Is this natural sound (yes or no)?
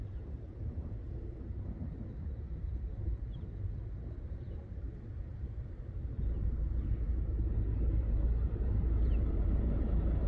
no